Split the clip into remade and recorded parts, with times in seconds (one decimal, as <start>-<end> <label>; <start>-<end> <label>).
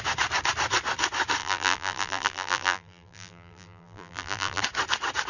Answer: 0.0-1.4 recorded; 1.4-4.6 remade; 4.6-5.3 recorded